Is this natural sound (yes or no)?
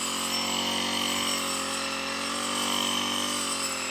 yes